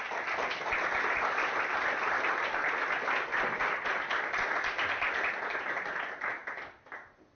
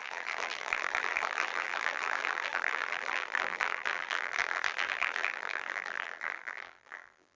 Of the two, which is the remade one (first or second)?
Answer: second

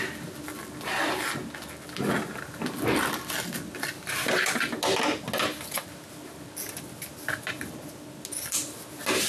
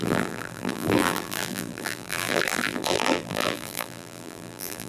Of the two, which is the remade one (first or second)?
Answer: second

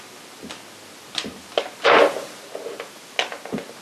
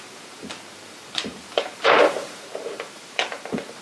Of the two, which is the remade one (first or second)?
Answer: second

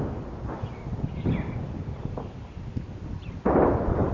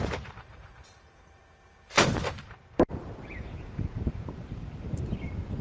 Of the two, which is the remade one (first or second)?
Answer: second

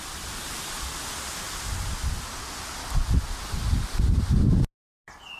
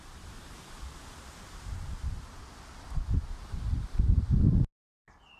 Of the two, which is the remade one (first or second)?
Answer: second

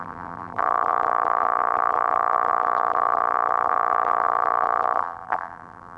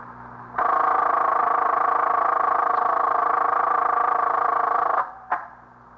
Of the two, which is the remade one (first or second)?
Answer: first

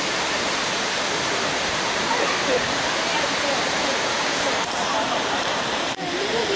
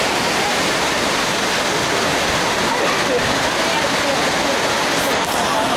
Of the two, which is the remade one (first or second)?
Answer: first